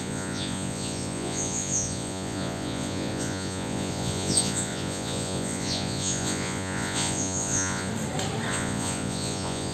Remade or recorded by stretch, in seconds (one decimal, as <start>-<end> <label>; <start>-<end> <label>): 0.0-7.9 remade; 7.9-8.5 recorded; 8.5-9.7 remade